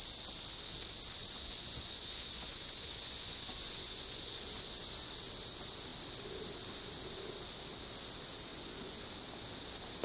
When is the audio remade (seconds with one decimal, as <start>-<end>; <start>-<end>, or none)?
1.2-5.1; 8.5-9.0